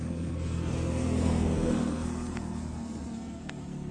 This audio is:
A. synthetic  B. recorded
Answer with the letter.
A